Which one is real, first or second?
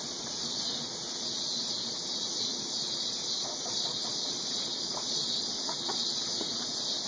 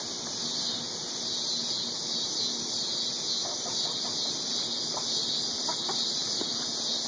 second